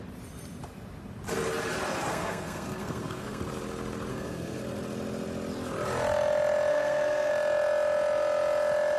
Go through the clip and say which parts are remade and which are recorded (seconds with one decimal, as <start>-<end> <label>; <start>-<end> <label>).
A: 0.0-2.1 recorded; 2.1-3.4 remade; 3.4-4.1 recorded; 4.1-4.6 remade; 4.6-6.7 recorded; 6.7-7.3 remade; 7.3-9.0 recorded